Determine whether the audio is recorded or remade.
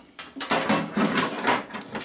recorded